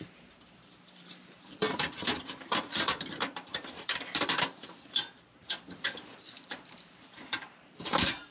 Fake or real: fake